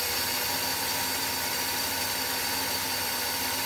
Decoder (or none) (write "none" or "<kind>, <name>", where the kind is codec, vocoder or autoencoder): vocoder, BigVGAN v2